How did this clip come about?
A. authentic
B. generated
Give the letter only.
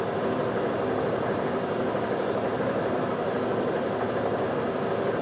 A